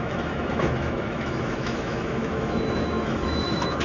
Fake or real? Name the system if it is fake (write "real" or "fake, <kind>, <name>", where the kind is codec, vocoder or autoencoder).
fake, autoencoder, DAC-VAE